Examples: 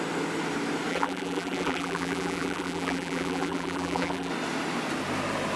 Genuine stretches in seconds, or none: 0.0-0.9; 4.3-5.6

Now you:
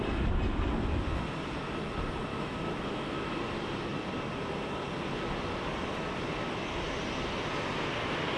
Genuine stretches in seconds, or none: 0.0-2.3; 3.4-8.4

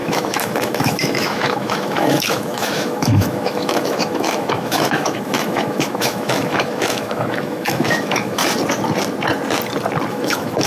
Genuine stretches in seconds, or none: 8.4-10.1

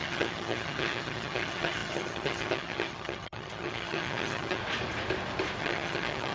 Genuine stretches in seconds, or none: 4.6-5.6

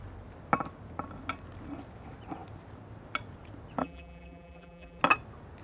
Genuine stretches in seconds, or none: 0.0-3.8; 5.0-5.6

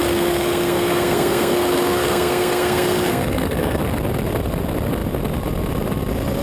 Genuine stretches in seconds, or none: 3.8-6.4